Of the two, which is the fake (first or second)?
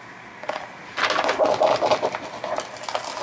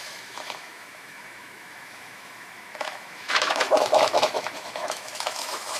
second